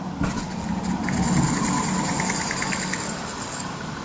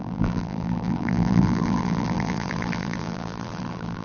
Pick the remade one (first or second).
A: second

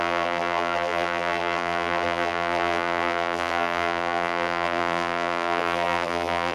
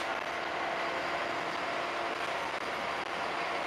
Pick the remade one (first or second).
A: first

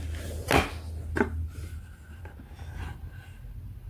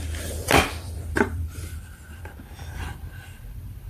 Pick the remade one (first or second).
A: second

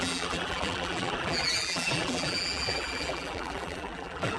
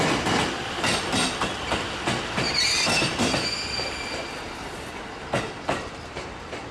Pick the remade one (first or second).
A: first